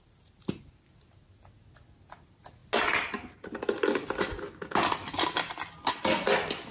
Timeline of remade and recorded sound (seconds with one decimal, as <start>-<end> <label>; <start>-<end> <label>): 0.0-6.7 recorded